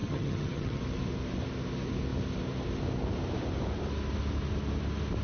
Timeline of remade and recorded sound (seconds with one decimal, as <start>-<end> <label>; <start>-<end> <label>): 0.0-0.8 remade; 0.8-5.2 recorded